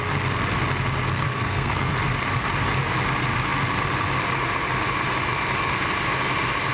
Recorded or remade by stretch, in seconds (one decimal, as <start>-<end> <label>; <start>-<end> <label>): 0.0-1.1 recorded; 1.1-1.9 remade; 1.9-6.7 recorded